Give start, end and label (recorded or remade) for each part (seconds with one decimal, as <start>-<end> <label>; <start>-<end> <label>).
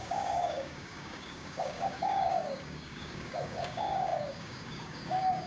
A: 0.0-5.5 remade